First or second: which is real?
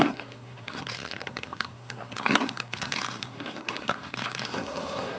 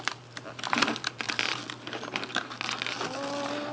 second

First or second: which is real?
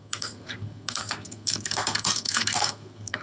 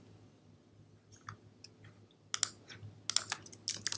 second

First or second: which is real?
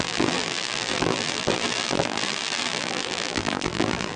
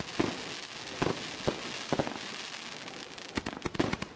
second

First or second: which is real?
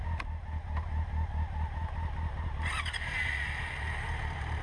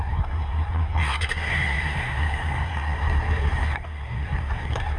first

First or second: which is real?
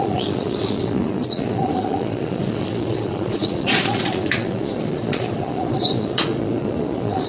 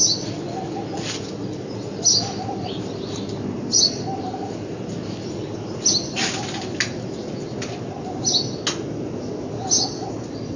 second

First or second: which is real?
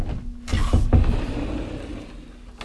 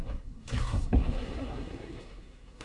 first